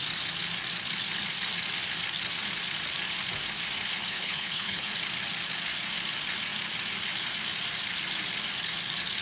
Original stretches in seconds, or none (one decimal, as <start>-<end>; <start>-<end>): 0.0-4.1; 4.9-9.2